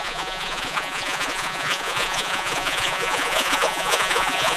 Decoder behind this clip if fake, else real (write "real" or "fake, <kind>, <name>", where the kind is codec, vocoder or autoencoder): fake, vocoder, Vocos